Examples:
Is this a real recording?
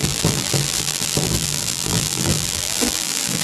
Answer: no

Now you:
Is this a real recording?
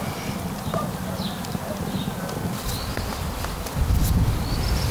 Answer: no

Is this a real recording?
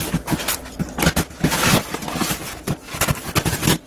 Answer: yes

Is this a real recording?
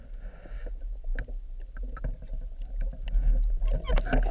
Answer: yes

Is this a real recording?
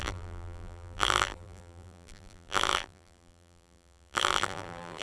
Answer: no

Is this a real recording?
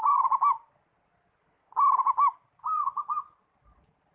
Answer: yes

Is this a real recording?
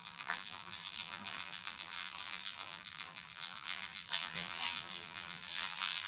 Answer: no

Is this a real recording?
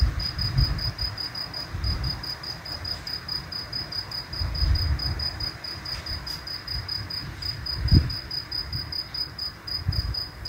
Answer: no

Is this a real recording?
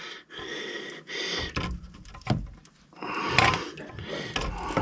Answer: yes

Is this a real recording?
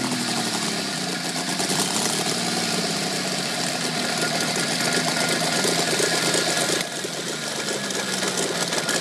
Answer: yes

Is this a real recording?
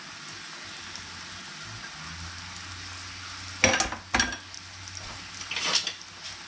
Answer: yes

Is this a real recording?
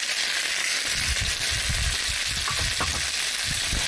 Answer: yes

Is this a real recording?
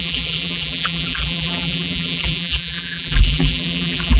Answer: no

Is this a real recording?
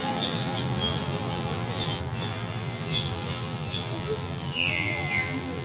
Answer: no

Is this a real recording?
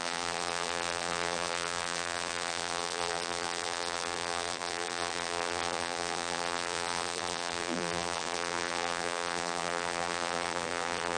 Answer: no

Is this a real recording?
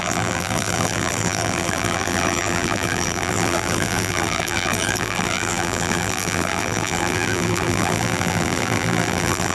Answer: no